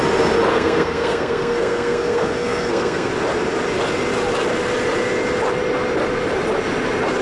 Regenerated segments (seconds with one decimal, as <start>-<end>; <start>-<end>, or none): 0.5-3.1

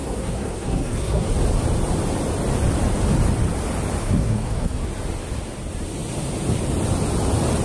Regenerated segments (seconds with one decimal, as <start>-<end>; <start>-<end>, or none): 0.0-1.3; 4.0-4.9

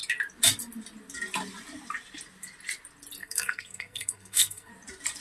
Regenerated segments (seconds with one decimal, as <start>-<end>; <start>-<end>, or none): 3.2-4.7

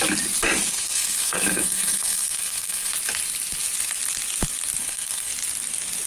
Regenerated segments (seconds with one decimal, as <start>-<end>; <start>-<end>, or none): 0.7-2.9; 4.8-5.3

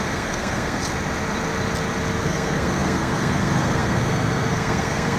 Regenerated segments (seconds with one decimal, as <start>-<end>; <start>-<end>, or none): 0.0-0.8; 2.2-5.2